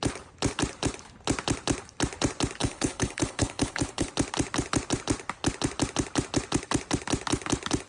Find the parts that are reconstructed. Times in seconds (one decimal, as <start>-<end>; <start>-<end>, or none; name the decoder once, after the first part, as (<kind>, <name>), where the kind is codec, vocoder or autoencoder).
2.6-4.1 (codec, HILCodec)